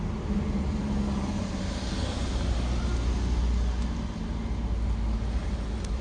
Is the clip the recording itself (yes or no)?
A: yes